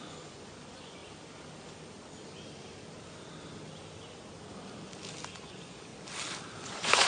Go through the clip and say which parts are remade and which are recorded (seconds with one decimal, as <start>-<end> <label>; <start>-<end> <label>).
0.0-1.0 remade; 1.0-5.3 recorded; 5.3-5.9 remade; 5.9-6.6 recorded; 6.6-7.1 remade